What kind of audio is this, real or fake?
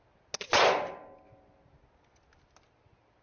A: real